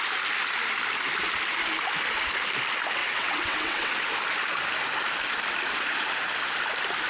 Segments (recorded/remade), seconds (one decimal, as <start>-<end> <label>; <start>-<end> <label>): 0.0-3.0 recorded; 3.0-3.9 remade; 3.9-7.1 recorded